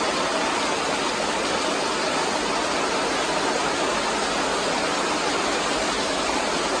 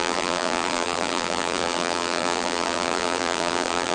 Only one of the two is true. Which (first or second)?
first